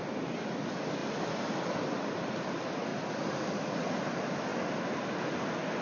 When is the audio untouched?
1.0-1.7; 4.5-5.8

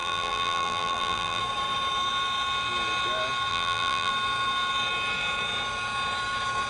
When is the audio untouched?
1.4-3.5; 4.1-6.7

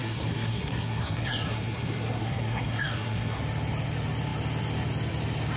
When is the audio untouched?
3.4-5.6

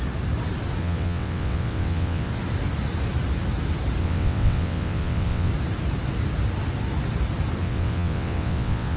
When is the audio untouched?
0.0-0.8; 2.3-4.0; 5.5-7.6